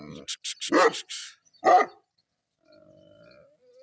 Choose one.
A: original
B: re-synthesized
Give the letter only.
A